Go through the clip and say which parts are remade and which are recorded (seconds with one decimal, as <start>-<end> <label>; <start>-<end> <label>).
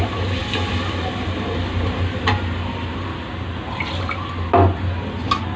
0.0-5.6 recorded